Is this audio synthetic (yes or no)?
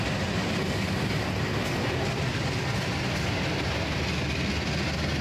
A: no